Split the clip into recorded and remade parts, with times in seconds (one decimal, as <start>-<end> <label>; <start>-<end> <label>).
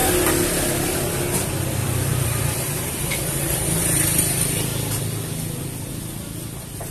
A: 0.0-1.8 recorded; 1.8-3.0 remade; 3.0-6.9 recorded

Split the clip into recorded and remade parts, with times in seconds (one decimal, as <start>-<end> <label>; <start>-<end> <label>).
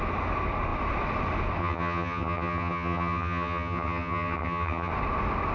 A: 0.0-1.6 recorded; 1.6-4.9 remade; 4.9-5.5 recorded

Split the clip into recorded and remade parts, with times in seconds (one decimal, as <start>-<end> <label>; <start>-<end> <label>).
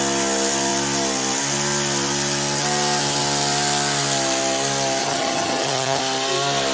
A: 0.0-5.0 recorded; 5.0-6.0 remade; 6.0-6.7 recorded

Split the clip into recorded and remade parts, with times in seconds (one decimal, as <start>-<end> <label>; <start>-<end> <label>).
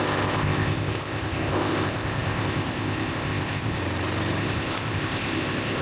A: 0.0-3.8 remade; 3.8-4.4 recorded; 4.4-5.8 remade